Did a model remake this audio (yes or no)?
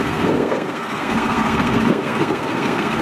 yes